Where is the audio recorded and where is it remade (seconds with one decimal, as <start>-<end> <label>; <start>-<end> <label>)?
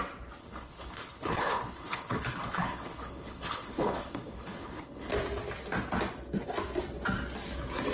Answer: 0.0-0.4 recorded; 0.4-5.1 remade; 5.1-7.9 recorded